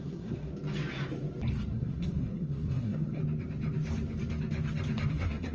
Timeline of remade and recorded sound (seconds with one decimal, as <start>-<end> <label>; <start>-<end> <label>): 0.0-0.5 remade; 0.5-1.7 recorded; 1.7-3.2 remade; 3.2-5.1 recorded; 5.1-5.5 remade

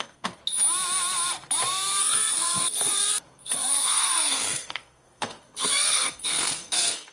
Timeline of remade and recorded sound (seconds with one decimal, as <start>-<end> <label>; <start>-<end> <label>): 0.0-0.4 remade; 0.4-2.0 recorded; 2.0-7.1 remade

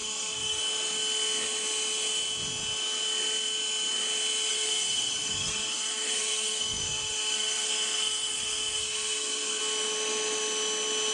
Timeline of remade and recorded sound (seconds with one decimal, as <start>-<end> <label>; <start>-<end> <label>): 0.0-0.6 remade; 0.6-4.5 recorded; 4.5-9.6 remade; 9.6-11.1 recorded

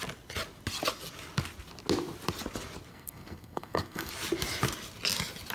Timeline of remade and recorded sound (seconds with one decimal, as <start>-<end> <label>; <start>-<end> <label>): 0.0-2.9 recorded; 2.9-4.1 remade; 4.1-5.5 recorded

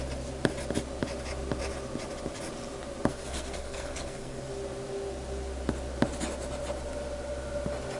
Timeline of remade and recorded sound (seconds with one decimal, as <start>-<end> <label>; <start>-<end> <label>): 0.0-3.1 recorded; 3.1-4.5 remade; 4.5-8.0 recorded

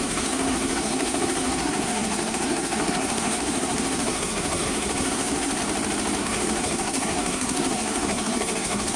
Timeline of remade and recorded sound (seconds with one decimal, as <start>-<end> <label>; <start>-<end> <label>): 0.0-5.6 remade; 5.6-6.2 recorded; 6.2-9.0 remade

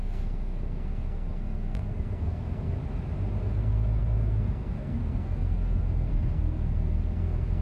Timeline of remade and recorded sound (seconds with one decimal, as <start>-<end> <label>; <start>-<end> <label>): 0.0-2.8 remade; 2.8-3.4 recorded; 3.4-7.6 remade

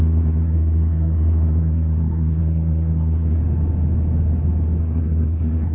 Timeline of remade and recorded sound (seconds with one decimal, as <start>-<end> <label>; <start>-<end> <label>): 0.0-3.4 remade; 3.4-4.8 recorded; 4.8-5.7 remade